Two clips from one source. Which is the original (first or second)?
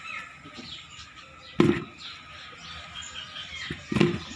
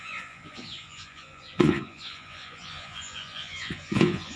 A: first